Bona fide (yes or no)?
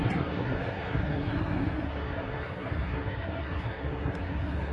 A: no